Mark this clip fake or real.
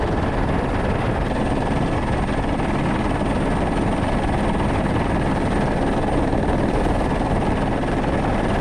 real